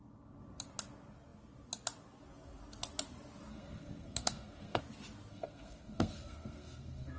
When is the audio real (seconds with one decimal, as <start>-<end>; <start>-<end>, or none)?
0.0-3.5; 4.8-5.3